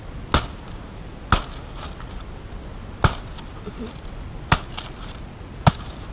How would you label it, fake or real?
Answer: real